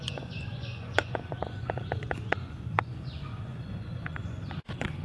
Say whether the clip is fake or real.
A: fake